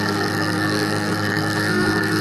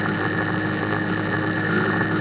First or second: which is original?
second